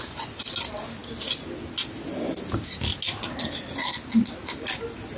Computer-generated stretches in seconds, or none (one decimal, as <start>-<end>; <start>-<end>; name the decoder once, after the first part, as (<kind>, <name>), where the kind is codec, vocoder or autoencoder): none